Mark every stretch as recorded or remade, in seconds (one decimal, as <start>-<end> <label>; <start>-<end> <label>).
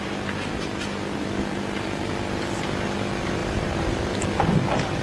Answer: 0.0-3.4 recorded; 3.4-4.2 remade; 4.2-5.0 recorded